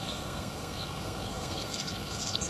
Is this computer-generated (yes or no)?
yes